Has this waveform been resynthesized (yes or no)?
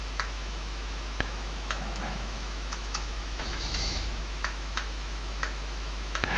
yes